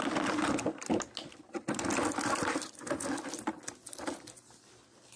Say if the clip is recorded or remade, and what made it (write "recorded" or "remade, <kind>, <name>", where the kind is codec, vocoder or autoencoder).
recorded